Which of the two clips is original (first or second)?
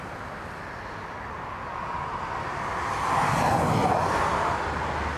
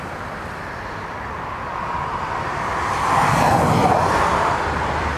first